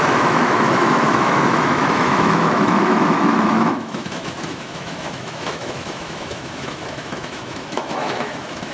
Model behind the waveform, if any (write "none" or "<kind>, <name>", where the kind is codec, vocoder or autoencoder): autoencoder, DAC-VAE